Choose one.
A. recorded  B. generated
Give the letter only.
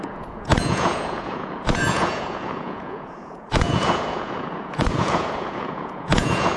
B